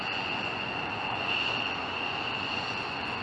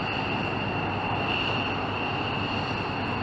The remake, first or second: first